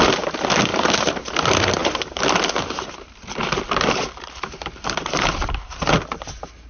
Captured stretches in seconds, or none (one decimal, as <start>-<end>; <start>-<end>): 0.0-0.7; 1.3-1.8; 5.8-6.7

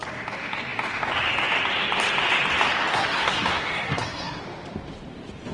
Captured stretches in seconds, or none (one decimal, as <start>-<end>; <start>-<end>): 0.0-2.9; 4.4-5.5

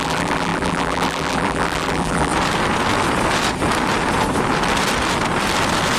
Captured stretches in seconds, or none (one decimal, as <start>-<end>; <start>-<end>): 2.3-6.0

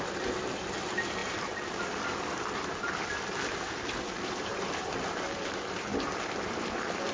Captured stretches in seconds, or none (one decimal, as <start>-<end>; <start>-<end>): none

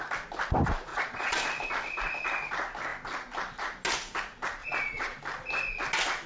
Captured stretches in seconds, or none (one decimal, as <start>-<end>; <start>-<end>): 0.0-0.9; 1.4-4.6; 5.2-6.3

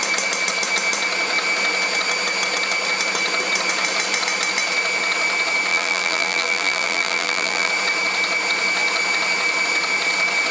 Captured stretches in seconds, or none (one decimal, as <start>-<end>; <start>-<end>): 0.0-5.7; 7.7-10.5

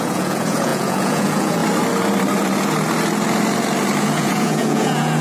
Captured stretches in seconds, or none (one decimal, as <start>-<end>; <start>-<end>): 1.6-4.0

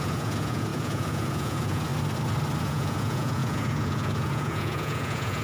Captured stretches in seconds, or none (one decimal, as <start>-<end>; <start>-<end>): 1.9-2.6